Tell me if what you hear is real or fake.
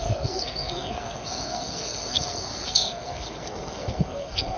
fake